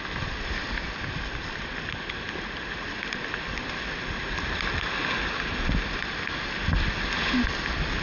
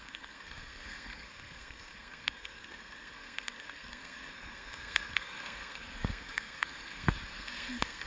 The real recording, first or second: first